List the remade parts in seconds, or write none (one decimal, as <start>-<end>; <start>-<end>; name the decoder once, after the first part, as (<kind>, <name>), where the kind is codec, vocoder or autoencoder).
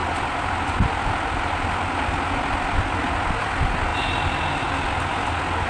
none